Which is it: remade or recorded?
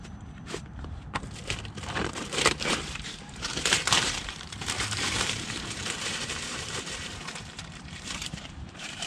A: remade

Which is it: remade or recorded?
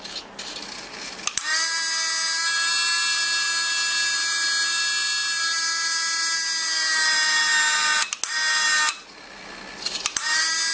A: recorded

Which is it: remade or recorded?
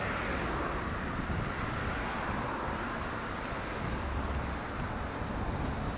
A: recorded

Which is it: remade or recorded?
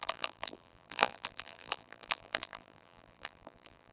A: remade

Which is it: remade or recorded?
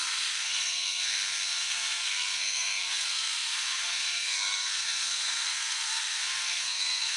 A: remade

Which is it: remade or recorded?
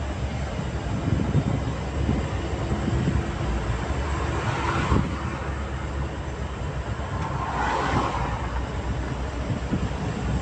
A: recorded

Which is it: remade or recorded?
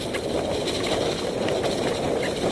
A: recorded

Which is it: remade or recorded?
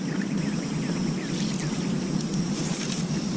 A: recorded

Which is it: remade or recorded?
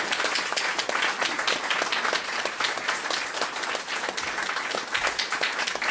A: recorded